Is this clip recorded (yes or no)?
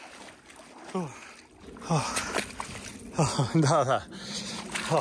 yes